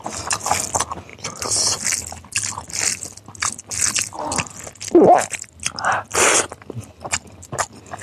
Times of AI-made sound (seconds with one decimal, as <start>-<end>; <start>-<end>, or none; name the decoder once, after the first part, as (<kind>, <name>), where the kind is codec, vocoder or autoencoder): none